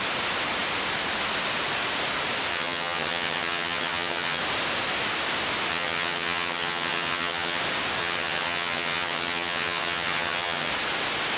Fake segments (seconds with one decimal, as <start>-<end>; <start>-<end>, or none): 2.5-4.4; 5.7-7.6; 8.0-10.7